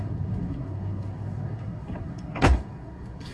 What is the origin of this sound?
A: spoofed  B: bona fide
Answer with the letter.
A